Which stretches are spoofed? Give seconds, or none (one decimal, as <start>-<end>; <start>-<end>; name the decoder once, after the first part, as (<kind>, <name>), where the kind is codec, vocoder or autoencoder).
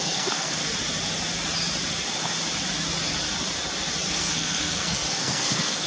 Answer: 0.0-0.6 (codec, SNAC); 4.1-5.9